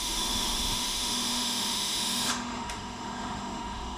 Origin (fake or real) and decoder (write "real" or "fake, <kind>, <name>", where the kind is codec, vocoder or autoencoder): fake, autoencoder, DAC-VAE